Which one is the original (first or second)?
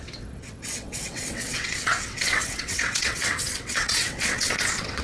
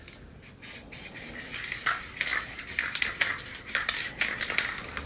second